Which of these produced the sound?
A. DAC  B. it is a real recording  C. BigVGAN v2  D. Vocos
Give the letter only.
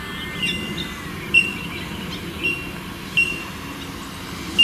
B